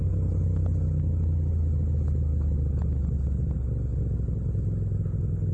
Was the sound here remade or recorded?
recorded